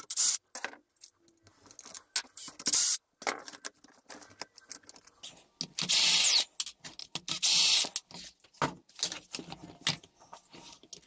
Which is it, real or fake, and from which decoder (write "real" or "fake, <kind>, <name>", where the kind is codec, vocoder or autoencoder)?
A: real